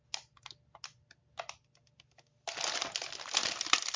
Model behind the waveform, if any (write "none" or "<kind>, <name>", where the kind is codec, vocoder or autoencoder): none